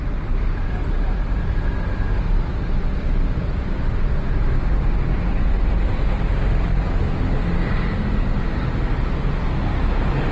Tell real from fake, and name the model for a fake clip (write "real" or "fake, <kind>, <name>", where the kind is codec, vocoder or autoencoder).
real